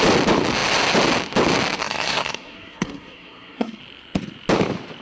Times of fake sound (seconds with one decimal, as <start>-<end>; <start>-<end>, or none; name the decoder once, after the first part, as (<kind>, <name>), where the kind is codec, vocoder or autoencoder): 1.8-3.8 (codec, SNAC)